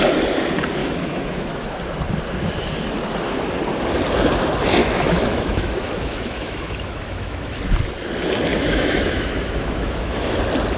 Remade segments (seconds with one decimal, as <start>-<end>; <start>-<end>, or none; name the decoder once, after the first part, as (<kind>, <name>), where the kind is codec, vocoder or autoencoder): 0.8-1.8 (autoencoder, DAC-VAE); 4.8-7.6; 8.5-10.4